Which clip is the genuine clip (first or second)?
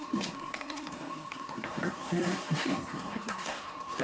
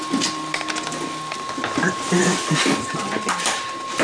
second